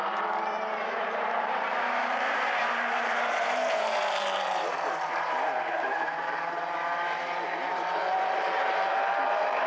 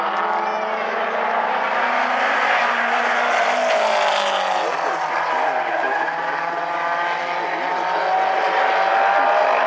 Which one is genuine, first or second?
second